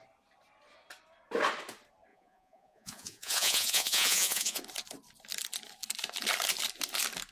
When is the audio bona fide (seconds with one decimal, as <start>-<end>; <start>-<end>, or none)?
0.0-2.1; 4.6-7.3